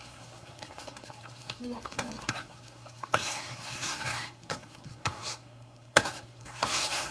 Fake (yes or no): yes